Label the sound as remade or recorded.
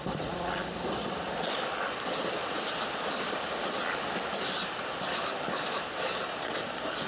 recorded